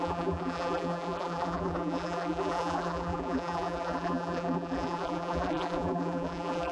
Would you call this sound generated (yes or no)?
yes